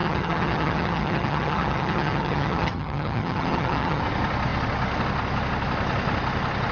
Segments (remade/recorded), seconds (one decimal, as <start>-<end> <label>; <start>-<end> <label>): 0.0-4.0 remade; 4.0-6.7 recorded